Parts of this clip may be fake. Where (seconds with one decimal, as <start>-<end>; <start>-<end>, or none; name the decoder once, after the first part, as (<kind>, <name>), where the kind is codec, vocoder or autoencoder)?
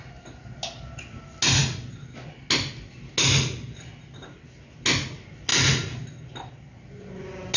none